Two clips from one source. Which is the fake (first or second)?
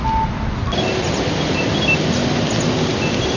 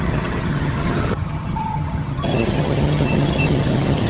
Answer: second